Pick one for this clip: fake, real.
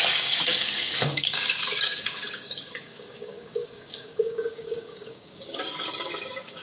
fake